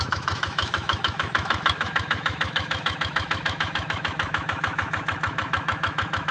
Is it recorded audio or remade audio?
remade